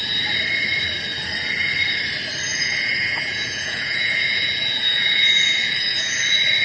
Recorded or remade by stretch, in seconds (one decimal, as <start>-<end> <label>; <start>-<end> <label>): 0.0-2.5 recorded; 2.5-6.1 remade; 6.1-6.6 recorded